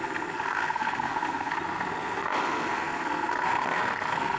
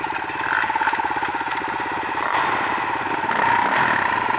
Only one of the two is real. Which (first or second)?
second